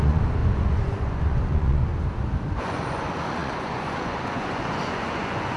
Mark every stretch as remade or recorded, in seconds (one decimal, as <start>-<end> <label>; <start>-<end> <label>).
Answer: 0.0-1.8 remade; 1.8-2.6 recorded; 2.6-5.6 remade